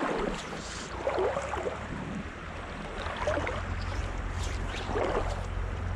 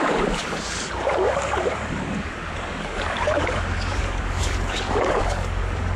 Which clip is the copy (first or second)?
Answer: second